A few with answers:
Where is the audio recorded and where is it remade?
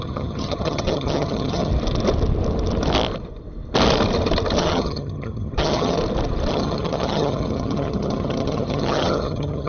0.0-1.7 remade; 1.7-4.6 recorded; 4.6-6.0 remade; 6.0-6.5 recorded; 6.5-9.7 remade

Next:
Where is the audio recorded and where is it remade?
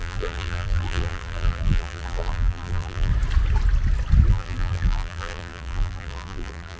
0.0-3.1 remade; 3.1-4.3 recorded; 4.3-6.8 remade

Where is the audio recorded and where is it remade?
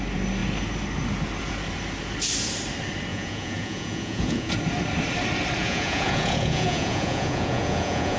0.0-3.1 recorded; 3.1-4.5 remade; 4.5-5.6 recorded; 5.6-8.2 remade